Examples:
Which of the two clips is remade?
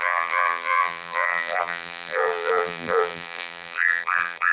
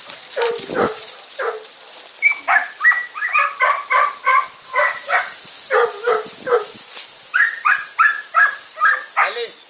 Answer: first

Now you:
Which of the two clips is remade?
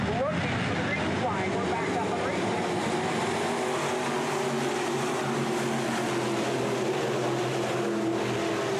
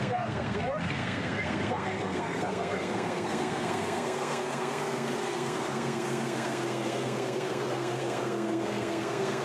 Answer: second